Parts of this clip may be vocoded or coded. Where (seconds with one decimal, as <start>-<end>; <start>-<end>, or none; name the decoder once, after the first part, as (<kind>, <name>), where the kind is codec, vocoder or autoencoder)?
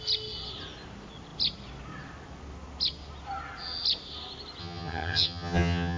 4.6-6.0 (vocoder, HiFi-GAN)